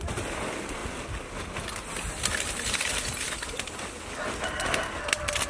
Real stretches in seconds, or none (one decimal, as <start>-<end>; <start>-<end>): 0.0-5.5